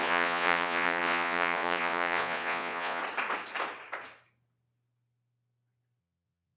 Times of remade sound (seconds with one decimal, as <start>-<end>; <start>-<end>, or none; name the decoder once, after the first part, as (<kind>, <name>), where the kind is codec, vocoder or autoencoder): 0.0-3.0 (vocoder, Vocos); 6.0-6.6